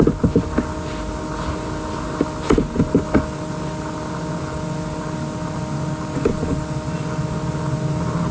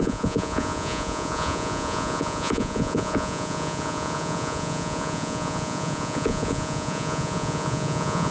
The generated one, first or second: second